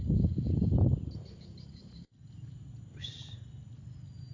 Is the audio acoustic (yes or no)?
yes